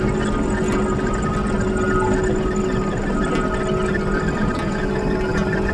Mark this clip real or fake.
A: real